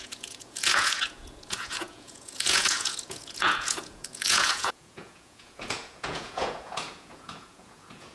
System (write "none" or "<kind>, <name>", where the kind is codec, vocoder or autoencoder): vocoder, Vocos